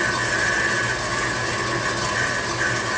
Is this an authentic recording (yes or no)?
yes